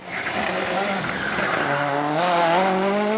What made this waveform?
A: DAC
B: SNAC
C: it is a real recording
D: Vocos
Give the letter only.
C